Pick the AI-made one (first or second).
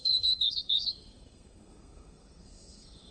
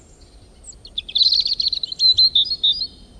first